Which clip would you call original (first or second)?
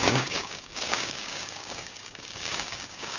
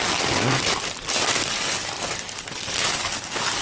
second